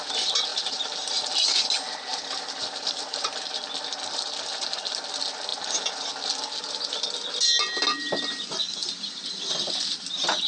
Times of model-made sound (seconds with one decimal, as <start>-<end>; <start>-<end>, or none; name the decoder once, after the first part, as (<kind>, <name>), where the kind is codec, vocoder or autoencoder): 0.5-1.3 (vocoder, BigVGAN v2); 2.1-3.4; 5.5-6.1